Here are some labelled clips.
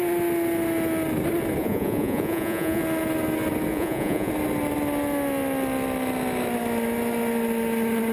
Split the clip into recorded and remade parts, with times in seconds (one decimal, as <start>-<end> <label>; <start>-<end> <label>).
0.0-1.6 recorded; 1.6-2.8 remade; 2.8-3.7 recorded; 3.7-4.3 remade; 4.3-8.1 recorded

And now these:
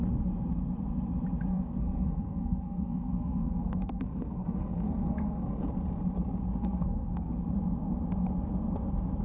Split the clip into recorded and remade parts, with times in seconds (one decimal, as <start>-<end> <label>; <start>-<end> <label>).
0.0-1.5 recorded; 1.5-5.7 remade; 5.7-6.6 recorded; 6.6-7.3 remade; 7.3-9.2 recorded

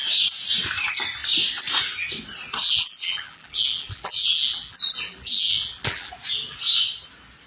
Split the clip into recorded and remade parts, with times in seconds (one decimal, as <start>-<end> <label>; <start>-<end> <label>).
0.0-2.6 recorded; 2.6-6.1 remade; 6.1-7.5 recorded